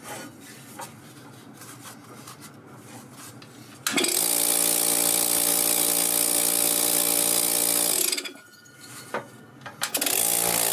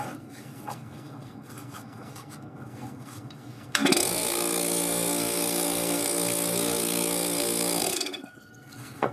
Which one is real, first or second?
first